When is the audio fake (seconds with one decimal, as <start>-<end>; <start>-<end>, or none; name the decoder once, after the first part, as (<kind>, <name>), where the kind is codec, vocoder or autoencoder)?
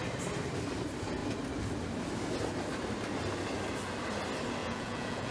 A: 4.6-5.3 (vocoder, Vocos)